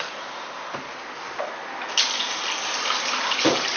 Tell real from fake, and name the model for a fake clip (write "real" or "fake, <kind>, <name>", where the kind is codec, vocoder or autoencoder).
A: real